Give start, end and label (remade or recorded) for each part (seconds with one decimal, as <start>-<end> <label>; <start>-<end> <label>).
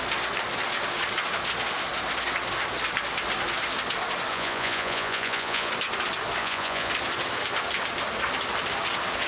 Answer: 0.0-4.3 recorded; 4.3-5.7 remade; 5.7-6.4 recorded; 6.4-6.9 remade; 6.9-9.3 recorded